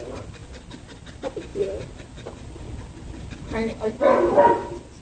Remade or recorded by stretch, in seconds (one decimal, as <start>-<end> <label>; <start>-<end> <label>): 0.0-5.0 recorded